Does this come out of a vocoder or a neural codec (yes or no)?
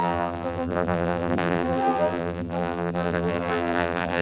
yes